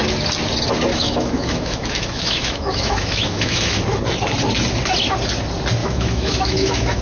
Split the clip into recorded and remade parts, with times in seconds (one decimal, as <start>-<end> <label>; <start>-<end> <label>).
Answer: 0.0-0.9 recorded; 0.9-3.8 remade; 3.8-5.8 recorded; 5.8-7.0 remade